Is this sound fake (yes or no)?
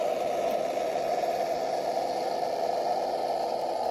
no